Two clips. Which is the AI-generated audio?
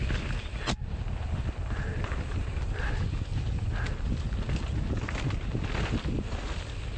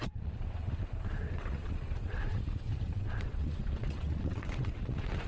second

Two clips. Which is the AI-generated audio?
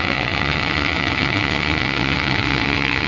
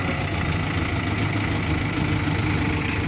first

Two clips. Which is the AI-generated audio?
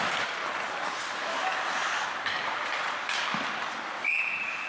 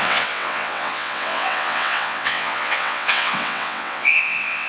second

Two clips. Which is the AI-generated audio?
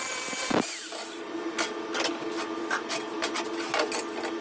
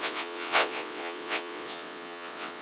second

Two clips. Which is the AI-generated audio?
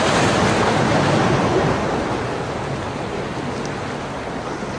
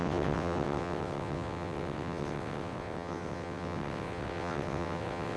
second